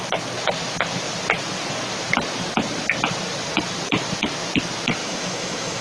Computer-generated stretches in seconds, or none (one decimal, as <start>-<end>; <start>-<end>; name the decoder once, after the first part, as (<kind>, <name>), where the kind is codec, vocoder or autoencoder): 5.0-5.8 (autoencoder, DAC-VAE)